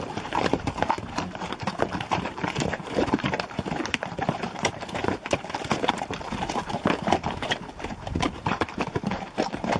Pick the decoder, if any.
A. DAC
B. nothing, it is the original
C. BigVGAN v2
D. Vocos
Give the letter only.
C